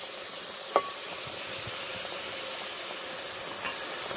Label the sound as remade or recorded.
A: recorded